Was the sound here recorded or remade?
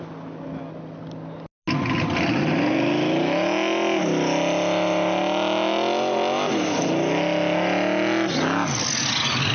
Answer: recorded